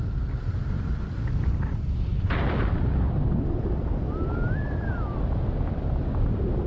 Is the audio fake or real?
real